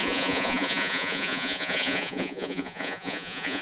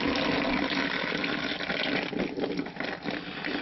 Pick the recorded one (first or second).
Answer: second